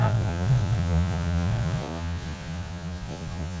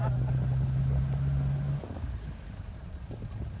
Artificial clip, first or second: first